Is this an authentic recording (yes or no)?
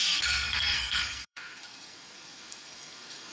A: no